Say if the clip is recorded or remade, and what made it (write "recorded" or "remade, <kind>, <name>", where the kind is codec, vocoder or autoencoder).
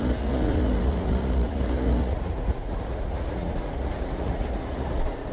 remade, vocoder, Vocos